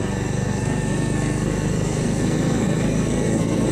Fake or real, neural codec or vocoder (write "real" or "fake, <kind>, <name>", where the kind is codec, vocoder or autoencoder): fake, codec, SNAC